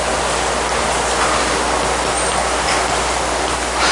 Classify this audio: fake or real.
real